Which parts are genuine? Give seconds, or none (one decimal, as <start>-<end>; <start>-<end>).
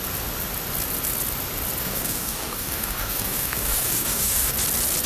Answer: 0.0-1.8; 4.5-5.1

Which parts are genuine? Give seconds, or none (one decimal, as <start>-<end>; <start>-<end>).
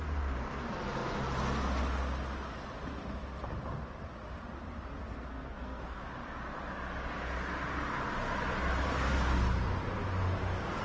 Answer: 0.0-5.0; 6.0-10.8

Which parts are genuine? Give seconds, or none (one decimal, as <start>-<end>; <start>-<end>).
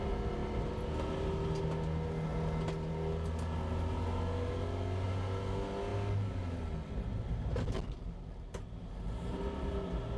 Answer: 0.0-10.2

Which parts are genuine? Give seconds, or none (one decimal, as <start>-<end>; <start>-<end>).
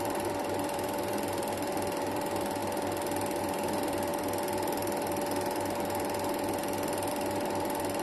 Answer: 2.6-3.4; 4.1-7.1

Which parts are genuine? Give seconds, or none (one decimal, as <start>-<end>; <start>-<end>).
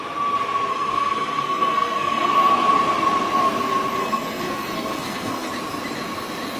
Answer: 0.0-0.7; 2.3-4.0; 5.5-6.6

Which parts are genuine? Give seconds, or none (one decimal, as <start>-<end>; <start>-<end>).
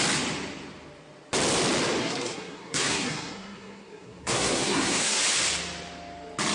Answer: 0.0-2.0; 5.2-6.5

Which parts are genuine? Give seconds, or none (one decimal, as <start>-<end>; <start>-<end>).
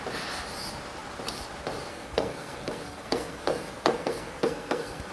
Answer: 0.0-1.9